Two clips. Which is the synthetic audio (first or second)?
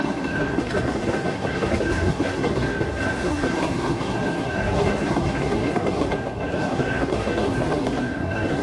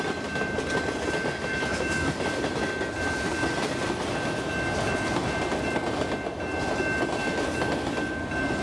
first